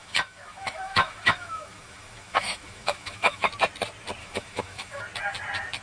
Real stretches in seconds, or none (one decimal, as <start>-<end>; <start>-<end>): 3.5-4.2; 5.0-5.8